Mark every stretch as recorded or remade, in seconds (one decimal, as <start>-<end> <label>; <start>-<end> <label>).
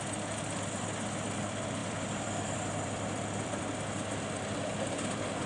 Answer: 0.0-1.8 recorded; 1.8-3.6 remade; 3.6-4.7 recorded; 4.7-5.5 remade